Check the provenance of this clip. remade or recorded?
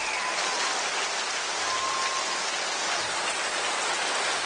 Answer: recorded